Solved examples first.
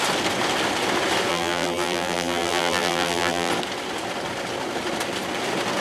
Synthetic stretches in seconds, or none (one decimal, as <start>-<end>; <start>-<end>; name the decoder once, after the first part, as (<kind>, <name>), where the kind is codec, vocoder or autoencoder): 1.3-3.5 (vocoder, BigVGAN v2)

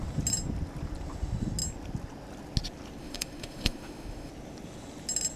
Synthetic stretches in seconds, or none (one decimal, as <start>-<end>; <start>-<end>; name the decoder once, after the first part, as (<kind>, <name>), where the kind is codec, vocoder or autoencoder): 3.0-4.3 (autoencoder, DAC-VAE)

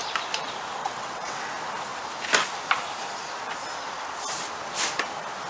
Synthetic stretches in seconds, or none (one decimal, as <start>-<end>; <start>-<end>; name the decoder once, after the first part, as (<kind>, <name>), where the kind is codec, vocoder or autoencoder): 0.8-1.5 (vocoder, WaveNeXt)

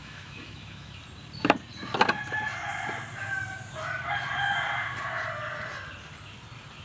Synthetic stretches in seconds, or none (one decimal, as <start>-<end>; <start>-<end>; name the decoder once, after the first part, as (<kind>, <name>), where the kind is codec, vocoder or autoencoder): 0.0-1.0 (autoencoder, DAC-VAE)

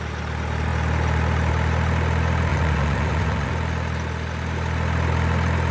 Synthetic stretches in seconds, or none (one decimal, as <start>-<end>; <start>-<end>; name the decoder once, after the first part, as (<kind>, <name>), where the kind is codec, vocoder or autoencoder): 2.5-3.5 (vocoder, Vocos)

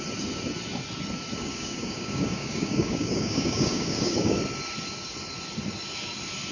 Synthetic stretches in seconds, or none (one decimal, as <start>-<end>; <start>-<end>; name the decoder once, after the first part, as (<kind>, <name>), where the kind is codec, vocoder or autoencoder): 1.4-4.4 (codec, DAC)